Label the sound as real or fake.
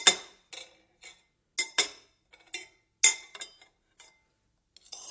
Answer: real